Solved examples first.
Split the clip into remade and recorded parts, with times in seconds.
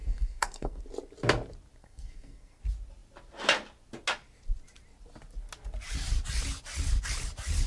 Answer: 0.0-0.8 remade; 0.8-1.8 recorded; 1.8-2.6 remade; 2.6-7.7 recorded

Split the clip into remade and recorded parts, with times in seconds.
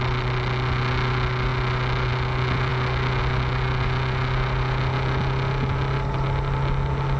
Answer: 0.0-7.2 recorded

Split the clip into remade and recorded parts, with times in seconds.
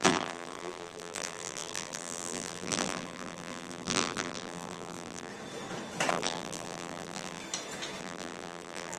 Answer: 0.0-5.3 remade; 5.3-6.1 recorded; 6.1-7.4 remade; 7.4-8.0 recorded; 8.0-9.0 remade